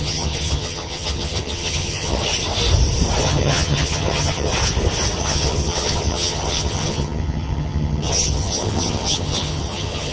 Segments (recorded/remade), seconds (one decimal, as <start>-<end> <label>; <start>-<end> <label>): 0.0-2.3 remade; 2.3-3.2 recorded; 3.2-4.5 remade; 4.5-5.2 recorded; 5.2-10.1 remade

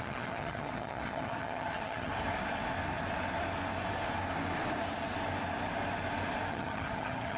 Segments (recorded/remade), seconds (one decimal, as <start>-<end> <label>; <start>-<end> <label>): 0.0-2.1 remade; 2.1-6.5 recorded; 6.5-7.4 remade

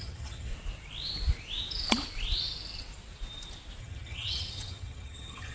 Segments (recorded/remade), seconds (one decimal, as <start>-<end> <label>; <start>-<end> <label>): 0.0-0.5 remade; 0.5-3.8 recorded; 3.8-5.5 remade

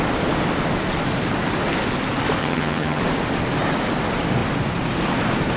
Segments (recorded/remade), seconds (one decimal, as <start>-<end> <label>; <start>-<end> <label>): 0.0-2.4 recorded; 2.4-3.0 remade; 3.0-5.6 recorded